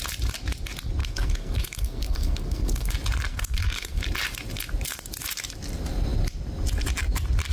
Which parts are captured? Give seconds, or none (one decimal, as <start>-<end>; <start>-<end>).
0.0-1.0; 2.9-3.3; 4.0-7.5